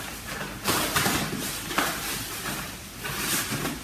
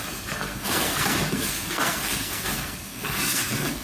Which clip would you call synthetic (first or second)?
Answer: second